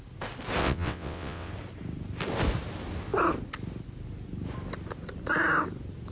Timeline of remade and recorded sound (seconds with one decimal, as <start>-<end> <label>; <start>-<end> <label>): 0.0-0.6 recorded; 0.6-1.5 remade; 1.5-6.1 recorded